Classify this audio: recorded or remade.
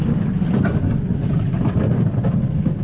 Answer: remade